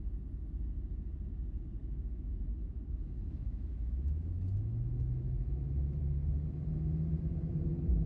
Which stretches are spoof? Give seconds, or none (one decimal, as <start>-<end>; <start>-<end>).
1.8-6.0